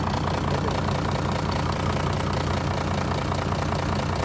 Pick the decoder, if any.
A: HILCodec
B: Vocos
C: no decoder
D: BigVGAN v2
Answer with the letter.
C